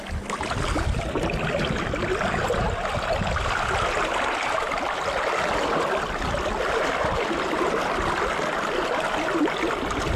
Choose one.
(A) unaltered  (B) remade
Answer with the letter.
A